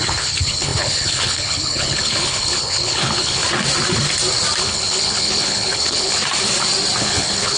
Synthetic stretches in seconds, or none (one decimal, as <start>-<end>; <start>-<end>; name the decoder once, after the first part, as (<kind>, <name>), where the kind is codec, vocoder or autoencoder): 0.0-3.4 (codec, HILCodec); 4.6-6.2; 7.0-7.6